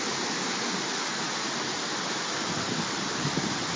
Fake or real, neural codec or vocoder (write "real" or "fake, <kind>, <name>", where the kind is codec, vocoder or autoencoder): real